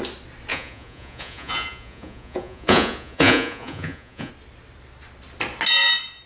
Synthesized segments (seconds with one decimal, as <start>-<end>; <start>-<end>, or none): 0.5-4.3